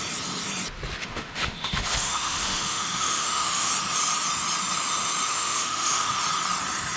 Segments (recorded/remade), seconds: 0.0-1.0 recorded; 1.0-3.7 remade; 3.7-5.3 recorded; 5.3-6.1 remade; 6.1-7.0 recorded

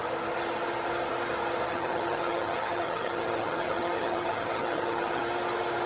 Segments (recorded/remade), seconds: 0.0-1.7 recorded; 1.7-5.2 remade; 5.2-5.9 recorded